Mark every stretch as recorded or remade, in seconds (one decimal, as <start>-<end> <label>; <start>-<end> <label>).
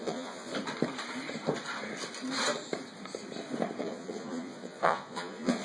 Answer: 0.0-0.5 remade; 0.5-3.8 recorded; 3.8-5.6 remade